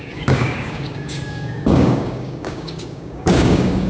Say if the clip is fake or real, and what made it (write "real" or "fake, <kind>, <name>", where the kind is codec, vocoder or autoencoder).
fake, codec, DAC